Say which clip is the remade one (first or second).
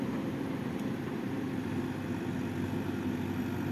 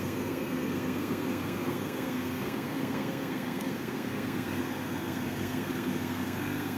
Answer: second